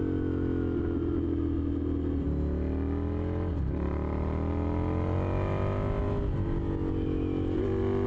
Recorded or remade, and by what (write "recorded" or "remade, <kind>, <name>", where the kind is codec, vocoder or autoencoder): recorded